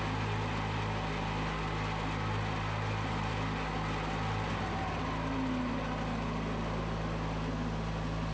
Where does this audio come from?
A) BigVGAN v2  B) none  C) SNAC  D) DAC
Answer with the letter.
B